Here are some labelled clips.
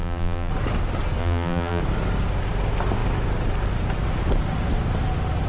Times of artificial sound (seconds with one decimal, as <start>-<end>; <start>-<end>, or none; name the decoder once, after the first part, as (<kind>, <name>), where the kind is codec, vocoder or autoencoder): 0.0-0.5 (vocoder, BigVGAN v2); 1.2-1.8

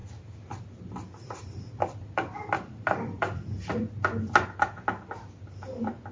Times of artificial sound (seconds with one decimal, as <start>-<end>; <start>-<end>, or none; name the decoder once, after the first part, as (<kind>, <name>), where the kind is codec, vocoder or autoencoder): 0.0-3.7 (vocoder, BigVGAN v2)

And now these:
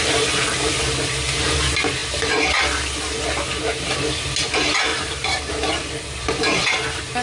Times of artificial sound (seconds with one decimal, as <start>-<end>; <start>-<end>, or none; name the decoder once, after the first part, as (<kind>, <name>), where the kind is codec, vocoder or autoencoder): 4.9-5.5 (vocoder, BigVGAN v2)